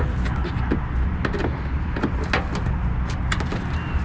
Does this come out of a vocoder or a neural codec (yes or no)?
no